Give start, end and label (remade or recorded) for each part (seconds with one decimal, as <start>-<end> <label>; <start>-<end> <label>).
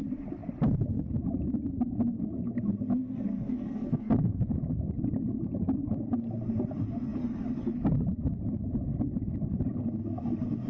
0.0-3.0 recorded; 3.0-4.5 remade; 4.5-10.7 recorded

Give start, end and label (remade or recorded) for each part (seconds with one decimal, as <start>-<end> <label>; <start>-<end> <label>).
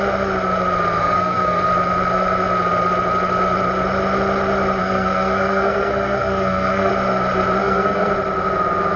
0.0-1.0 recorded; 1.0-1.6 remade; 1.6-4.8 recorded; 4.8-6.9 remade; 6.9-7.6 recorded; 7.6-8.1 remade; 8.1-9.0 recorded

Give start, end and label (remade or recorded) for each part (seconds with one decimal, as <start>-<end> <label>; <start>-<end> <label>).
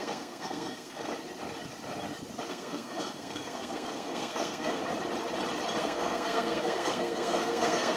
0.0-1.1 remade; 1.1-2.5 recorded; 2.5-4.8 remade; 4.8-5.8 recorded; 5.8-8.0 remade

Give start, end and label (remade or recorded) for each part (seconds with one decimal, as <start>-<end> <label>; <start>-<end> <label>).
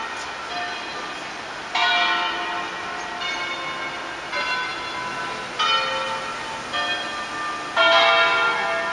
0.0-8.9 recorded